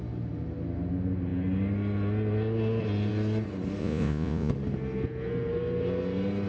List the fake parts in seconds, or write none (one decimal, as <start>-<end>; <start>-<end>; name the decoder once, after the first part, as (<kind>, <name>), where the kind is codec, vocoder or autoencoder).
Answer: 3.8-4.5 (vocoder, Vocos)